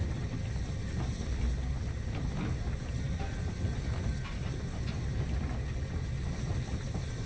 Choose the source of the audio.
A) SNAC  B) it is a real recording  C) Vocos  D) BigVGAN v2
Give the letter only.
B